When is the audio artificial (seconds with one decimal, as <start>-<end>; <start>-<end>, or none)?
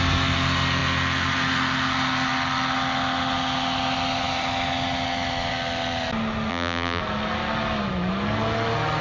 6.5-7.0